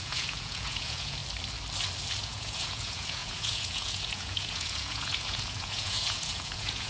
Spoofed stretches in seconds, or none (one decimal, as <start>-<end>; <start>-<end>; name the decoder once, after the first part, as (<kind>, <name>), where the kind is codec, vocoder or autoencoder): 0.0-1.2 (vocoder, Vocos); 2.2-6.9